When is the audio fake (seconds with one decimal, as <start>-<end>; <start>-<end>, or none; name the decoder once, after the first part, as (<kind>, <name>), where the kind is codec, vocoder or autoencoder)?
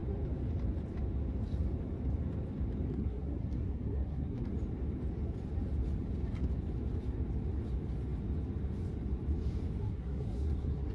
2.9-4.6 (codec, SNAC); 9.8-10.9